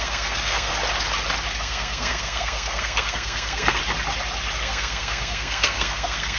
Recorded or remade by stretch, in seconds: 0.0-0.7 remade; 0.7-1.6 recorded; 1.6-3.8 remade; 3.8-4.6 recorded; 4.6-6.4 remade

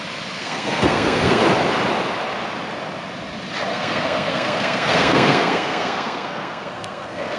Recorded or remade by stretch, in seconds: 0.0-0.4 recorded; 0.4-1.4 remade; 1.4-3.7 recorded; 3.7-7.4 remade

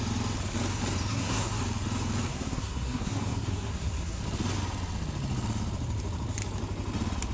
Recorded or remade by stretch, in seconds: 0.0-1.1 recorded; 1.1-1.6 remade; 1.6-2.3 recorded; 2.3-4.2 remade; 4.2-7.3 recorded

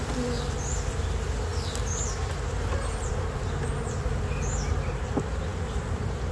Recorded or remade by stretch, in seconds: 0.0-6.3 recorded